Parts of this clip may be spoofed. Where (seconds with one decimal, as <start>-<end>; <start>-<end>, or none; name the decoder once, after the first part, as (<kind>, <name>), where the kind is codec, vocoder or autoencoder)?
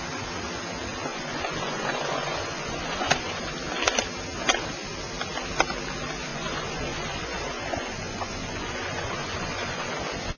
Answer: 1.1-3.4 (vocoder, Vocos); 6.3-9.9